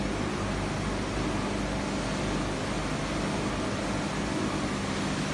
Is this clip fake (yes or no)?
no